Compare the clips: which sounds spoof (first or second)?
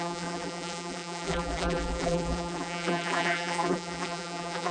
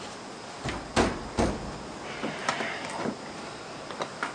first